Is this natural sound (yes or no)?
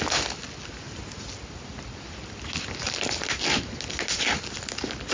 yes